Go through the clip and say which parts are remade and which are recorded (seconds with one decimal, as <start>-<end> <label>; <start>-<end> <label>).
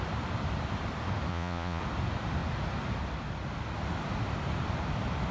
0.0-1.3 recorded; 1.3-1.8 remade; 1.8-5.3 recorded